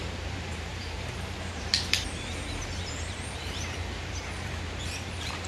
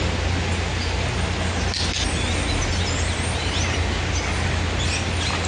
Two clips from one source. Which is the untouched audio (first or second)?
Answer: second